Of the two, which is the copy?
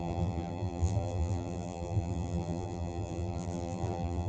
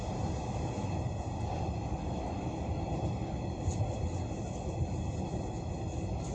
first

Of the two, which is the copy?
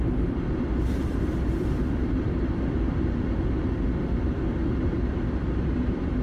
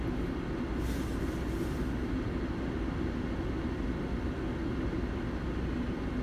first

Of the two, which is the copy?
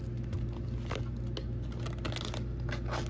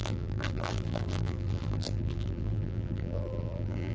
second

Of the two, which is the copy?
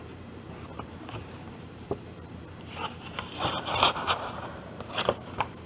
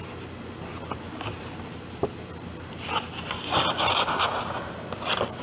first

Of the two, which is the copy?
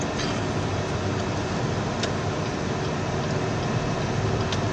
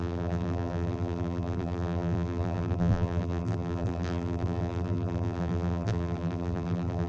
second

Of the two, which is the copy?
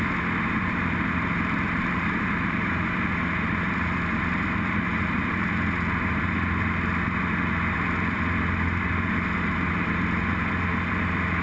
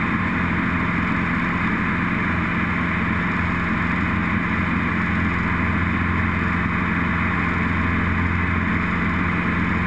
first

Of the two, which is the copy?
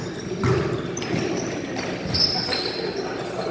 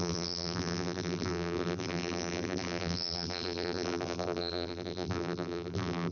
second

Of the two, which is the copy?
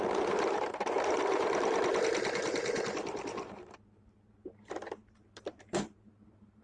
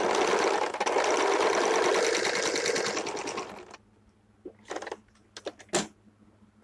first